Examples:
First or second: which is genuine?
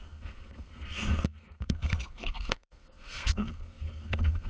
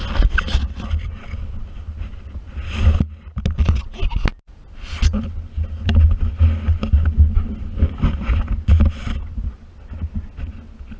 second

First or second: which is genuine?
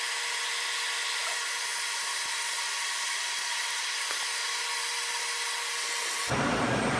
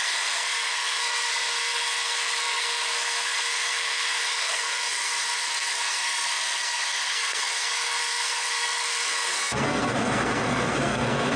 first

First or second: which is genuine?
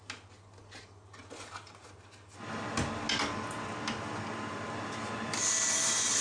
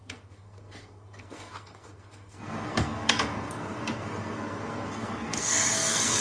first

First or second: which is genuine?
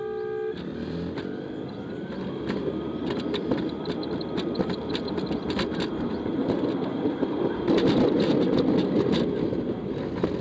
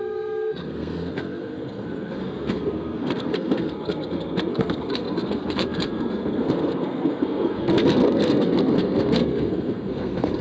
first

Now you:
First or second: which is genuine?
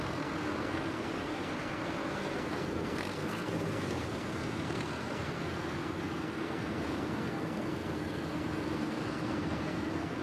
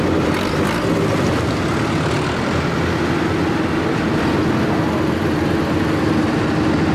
second